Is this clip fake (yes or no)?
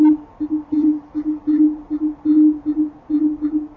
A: no